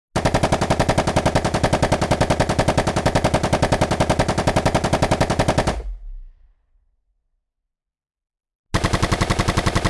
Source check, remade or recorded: recorded